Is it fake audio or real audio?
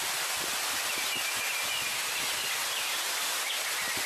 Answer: real